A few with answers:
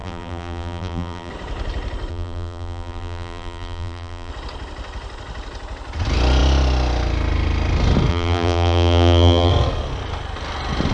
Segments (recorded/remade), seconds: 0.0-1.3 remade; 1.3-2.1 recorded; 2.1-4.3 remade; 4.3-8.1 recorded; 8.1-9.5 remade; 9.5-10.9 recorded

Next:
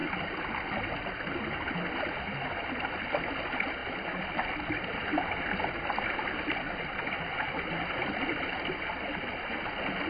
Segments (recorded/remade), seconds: 0.0-10.1 recorded